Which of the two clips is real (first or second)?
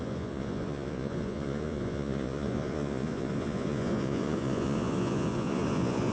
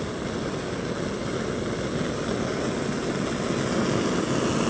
second